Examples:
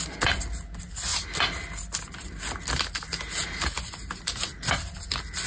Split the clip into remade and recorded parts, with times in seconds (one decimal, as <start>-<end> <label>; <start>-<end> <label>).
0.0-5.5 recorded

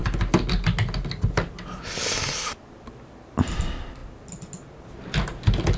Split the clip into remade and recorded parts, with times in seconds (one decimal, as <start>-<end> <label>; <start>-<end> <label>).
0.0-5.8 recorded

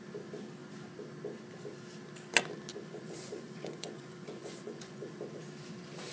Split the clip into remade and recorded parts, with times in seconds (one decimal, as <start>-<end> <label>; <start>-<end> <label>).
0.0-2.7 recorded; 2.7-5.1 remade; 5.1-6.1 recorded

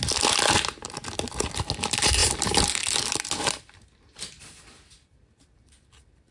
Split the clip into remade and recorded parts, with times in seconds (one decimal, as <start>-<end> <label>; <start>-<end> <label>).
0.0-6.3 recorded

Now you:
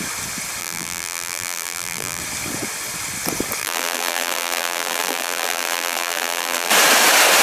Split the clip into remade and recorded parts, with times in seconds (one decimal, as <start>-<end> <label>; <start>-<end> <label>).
0.0-0.6 recorded; 0.6-2.2 remade; 2.2-3.6 recorded; 3.6-6.7 remade; 6.7-7.4 recorded

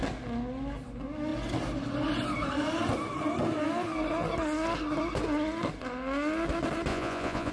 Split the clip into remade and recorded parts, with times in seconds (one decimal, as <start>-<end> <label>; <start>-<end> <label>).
0.0-6.9 recorded; 6.9-7.5 remade

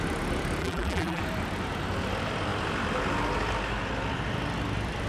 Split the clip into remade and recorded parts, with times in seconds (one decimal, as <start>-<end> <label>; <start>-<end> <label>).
0.0-0.6 recorded; 0.6-1.2 remade; 1.2-5.1 recorded